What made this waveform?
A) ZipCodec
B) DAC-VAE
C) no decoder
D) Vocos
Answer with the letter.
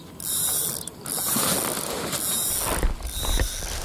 C